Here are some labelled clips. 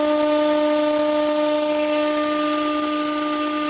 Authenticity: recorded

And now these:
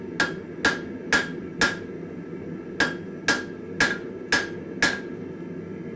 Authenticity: recorded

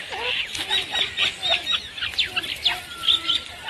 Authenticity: recorded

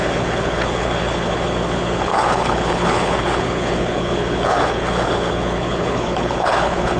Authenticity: remade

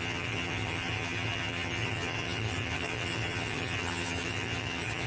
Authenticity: remade